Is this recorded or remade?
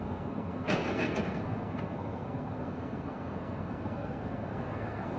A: remade